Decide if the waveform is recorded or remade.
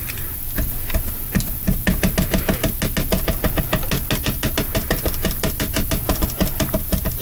recorded